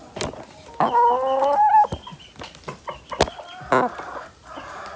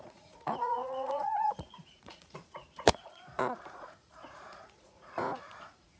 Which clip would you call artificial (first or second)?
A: second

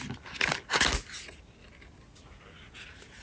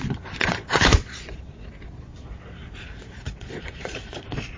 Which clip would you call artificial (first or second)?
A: second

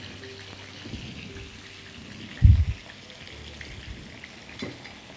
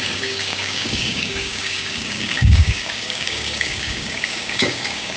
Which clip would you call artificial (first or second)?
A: second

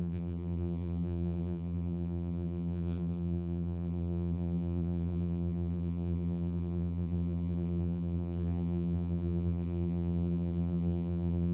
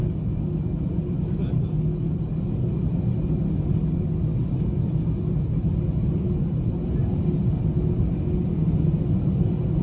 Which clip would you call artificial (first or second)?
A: first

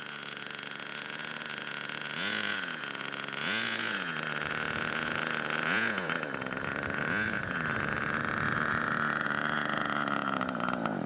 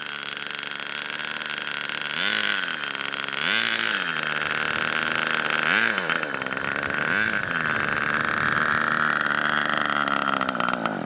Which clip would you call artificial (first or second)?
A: first